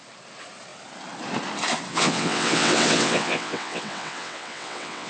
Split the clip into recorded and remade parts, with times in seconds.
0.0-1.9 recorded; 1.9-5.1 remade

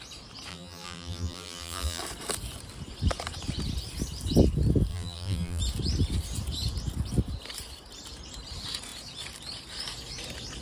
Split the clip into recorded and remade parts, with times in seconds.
0.0-0.5 recorded; 0.5-2.0 remade; 2.0-4.9 recorded; 4.9-5.6 remade; 5.6-10.6 recorded

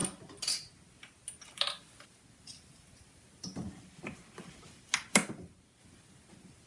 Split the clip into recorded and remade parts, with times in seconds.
0.0-6.7 recorded

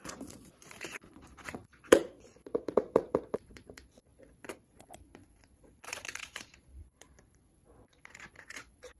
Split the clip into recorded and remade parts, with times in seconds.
0.0-9.0 remade

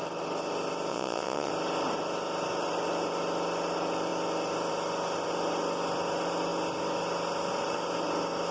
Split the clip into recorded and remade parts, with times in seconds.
0.0-0.9 recorded; 0.9-1.5 remade; 1.5-8.5 recorded

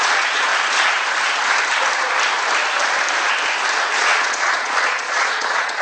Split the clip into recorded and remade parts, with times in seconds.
0.0-0.5 remade; 0.5-4.0 recorded; 4.0-5.8 remade